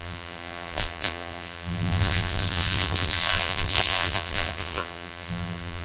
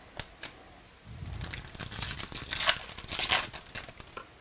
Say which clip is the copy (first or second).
first